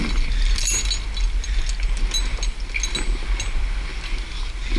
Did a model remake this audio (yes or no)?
no